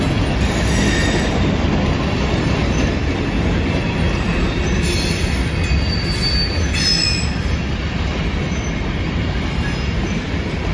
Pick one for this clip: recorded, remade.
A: recorded